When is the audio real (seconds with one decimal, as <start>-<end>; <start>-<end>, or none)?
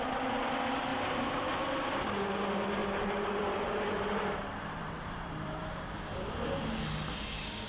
0.0-0.9; 1.6-2.8; 6.7-7.7